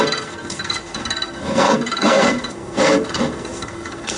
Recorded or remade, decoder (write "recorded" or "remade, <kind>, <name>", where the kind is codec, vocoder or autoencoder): remade, codec, SNAC